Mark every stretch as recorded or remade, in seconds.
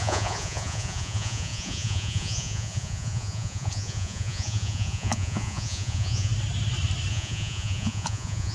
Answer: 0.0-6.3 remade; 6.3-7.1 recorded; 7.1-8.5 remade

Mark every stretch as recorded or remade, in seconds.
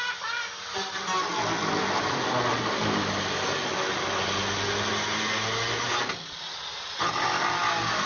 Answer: 0.0-8.1 recorded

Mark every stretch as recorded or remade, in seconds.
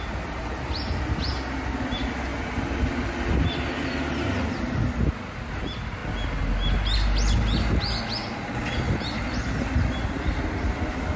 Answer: 0.0-11.2 recorded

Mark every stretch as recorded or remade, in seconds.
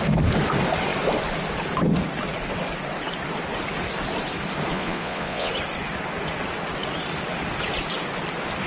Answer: 0.0-4.7 recorded; 4.7-5.5 remade; 5.5-8.7 recorded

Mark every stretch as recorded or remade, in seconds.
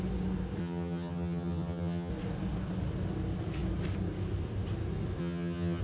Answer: 0.0-0.6 recorded; 0.6-2.1 remade; 2.1-5.2 recorded; 5.2-5.8 remade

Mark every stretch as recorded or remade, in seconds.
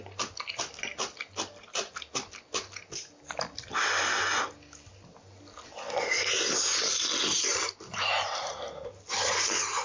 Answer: 0.0-7.5 recorded; 7.5-8.6 remade; 8.6-9.8 recorded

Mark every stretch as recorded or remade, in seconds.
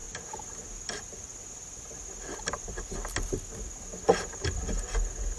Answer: 0.0-5.4 recorded